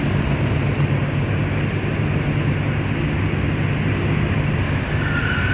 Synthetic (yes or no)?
no